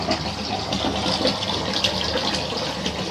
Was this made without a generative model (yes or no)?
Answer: yes